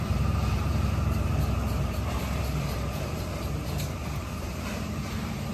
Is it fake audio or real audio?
fake